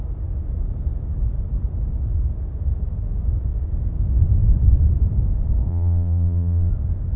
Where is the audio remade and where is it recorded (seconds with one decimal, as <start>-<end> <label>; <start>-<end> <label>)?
0.0-5.7 recorded; 5.7-6.7 remade; 6.7-7.2 recorded